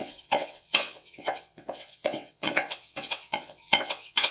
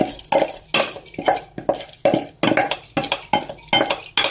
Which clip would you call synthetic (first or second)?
first